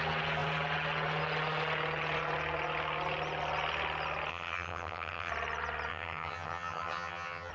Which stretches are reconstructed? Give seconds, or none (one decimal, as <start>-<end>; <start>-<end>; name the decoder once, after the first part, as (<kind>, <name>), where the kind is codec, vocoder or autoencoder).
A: 4.3-5.3 (vocoder, HiFi-GAN); 5.9-7.5